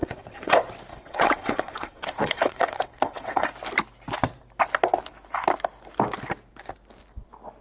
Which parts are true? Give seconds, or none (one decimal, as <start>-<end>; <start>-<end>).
0.5-0.9; 3.5-7.6